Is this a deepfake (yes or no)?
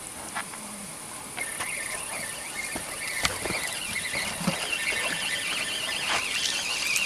no